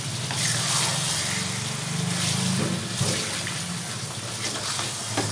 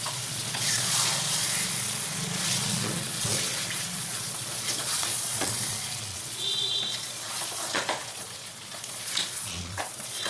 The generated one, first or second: second